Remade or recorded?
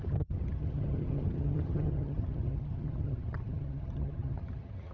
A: remade